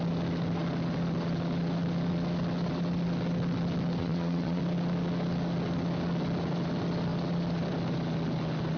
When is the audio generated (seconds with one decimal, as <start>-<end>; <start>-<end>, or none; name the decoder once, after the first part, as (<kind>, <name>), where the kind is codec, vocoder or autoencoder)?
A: 4.0-4.6 (vocoder, Vocos)